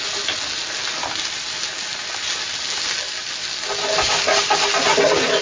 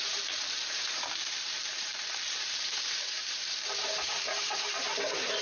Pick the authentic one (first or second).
first